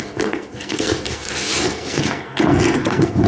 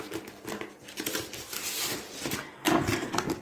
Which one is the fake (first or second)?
first